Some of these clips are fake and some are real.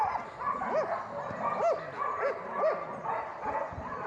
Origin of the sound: real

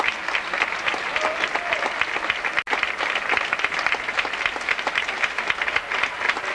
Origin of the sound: real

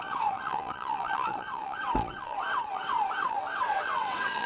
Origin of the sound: fake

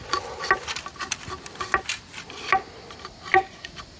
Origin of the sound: real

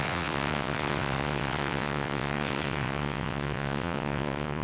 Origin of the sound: fake